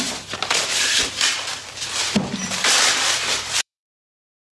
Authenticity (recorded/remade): remade